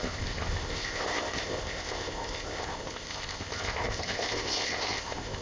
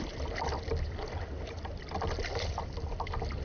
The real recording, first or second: second